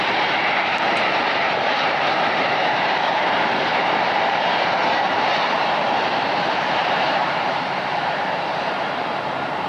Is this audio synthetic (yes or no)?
yes